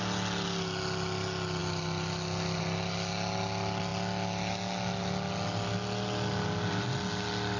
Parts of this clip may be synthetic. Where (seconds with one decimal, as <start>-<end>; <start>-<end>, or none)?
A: none